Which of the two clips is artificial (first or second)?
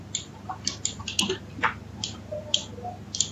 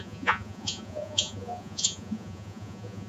second